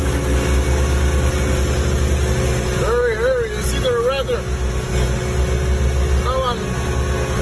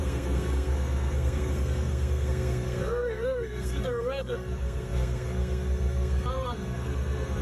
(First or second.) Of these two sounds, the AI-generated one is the second